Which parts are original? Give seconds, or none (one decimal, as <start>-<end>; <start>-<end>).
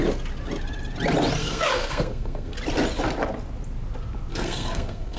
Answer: 0.0-1.4; 2.5-4.3